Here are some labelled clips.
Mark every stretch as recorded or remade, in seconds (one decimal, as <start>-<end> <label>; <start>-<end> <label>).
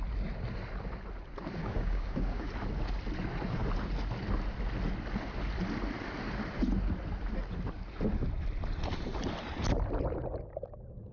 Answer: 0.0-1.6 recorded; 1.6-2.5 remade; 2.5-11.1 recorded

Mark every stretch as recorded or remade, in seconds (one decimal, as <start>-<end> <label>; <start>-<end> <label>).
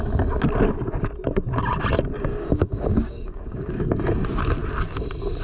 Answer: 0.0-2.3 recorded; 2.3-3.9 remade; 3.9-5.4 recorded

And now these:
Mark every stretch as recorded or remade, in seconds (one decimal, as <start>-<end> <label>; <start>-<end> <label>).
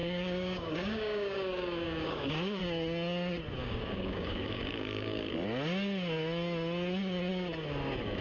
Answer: 0.0-2.6 remade; 2.6-3.6 recorded; 3.6-5.3 remade; 5.3-8.2 recorded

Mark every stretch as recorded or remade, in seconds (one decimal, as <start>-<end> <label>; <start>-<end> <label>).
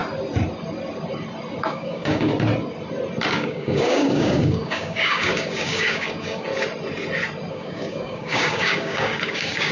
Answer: 0.0-1.6 recorded; 1.6-2.3 remade; 2.3-3.3 recorded; 3.3-6.5 remade; 6.5-7.5 recorded; 7.5-9.7 remade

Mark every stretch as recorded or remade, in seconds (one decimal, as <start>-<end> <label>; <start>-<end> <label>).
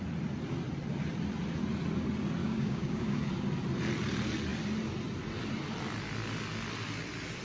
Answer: 0.0-2.4 recorded; 2.4-3.2 remade; 3.2-7.4 recorded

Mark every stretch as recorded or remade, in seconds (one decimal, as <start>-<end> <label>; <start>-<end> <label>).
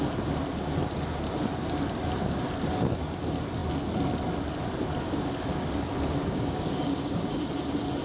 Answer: 0.0-6.2 recorded; 6.2-7.4 remade; 7.4-8.0 recorded